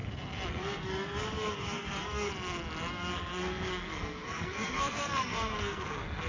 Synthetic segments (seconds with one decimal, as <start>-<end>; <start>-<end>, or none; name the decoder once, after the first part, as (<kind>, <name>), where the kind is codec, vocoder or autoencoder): 0.5-2.3 (codec, SNAC); 2.9-6.3